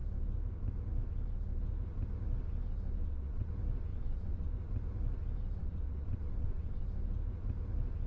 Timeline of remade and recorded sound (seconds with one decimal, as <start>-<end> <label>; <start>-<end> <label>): 0.0-3.0 recorded; 3.0-3.5 remade; 3.5-3.9 recorded; 3.9-4.5 remade; 4.5-5.6 recorded; 5.6-6.8 remade; 6.8-8.1 recorded